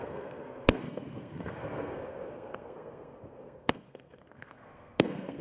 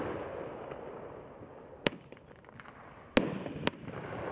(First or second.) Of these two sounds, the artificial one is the first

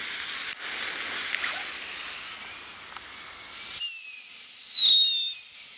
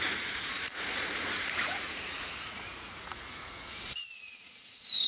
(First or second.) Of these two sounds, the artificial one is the second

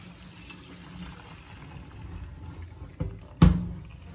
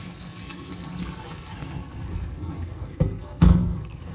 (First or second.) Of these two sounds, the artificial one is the second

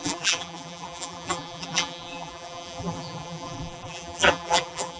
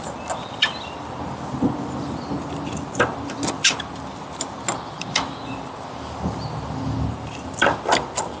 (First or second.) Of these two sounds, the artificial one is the first